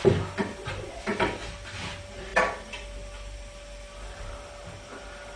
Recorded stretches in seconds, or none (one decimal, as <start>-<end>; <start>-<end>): 0.0-5.4